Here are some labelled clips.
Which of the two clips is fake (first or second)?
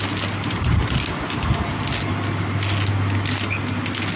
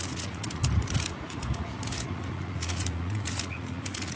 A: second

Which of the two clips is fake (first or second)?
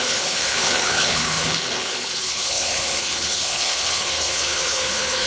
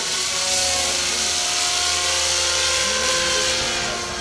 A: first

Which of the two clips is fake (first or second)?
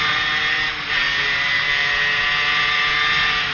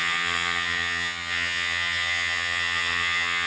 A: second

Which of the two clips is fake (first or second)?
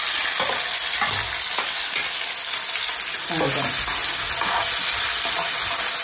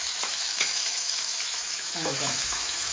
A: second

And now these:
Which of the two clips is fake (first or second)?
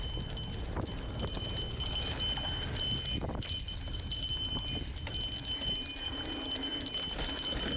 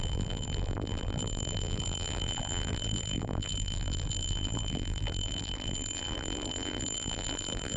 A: second